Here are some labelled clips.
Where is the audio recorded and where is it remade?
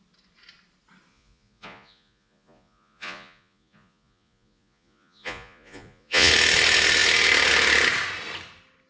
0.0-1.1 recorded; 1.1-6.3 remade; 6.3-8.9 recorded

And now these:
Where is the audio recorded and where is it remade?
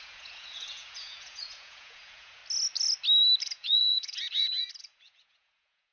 0.0-2.4 remade; 2.4-3.4 recorded; 3.4-5.9 remade